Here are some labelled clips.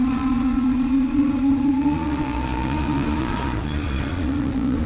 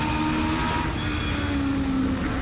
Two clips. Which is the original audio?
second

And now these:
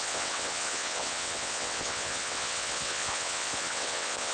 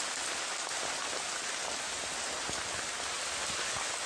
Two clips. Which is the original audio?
second